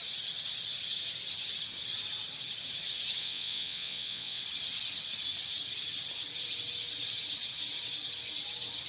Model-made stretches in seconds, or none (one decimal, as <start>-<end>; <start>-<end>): 3.2-4.4